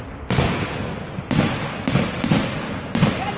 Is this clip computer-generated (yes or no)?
no